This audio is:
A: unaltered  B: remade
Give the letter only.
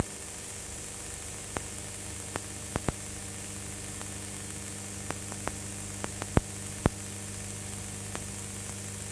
A